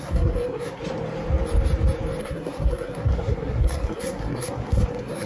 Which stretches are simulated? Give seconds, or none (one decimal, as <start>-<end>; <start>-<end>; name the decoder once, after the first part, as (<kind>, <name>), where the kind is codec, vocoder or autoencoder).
0.0-0.8 (codec, SNAC); 2.2-5.3